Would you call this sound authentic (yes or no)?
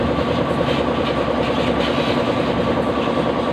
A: yes